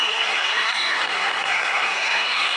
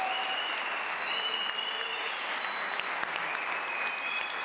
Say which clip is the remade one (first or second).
first